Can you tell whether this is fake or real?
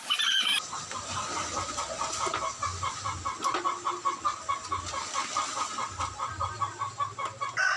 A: real